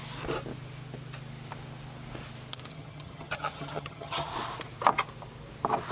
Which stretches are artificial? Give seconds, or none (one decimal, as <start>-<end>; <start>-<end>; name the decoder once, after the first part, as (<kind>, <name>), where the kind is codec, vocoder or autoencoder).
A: 2.7-4.3 (vocoder, HiFi-GAN)